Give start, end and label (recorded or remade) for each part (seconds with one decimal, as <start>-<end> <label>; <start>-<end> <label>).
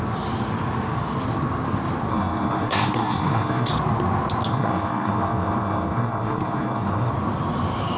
0.0-2.1 recorded; 2.1-3.7 remade; 3.7-4.5 recorded; 4.5-7.1 remade; 7.1-8.0 recorded